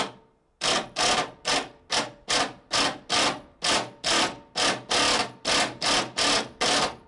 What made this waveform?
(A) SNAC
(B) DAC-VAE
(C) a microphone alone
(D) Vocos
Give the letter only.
C